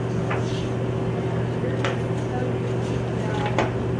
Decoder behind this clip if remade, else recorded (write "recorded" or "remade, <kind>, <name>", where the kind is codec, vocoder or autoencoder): recorded